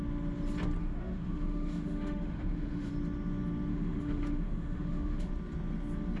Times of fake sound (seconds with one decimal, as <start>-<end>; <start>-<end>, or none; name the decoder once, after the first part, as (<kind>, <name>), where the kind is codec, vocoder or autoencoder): 0.8-2.9 (autoencoder, DAC-VAE); 3.7-5.3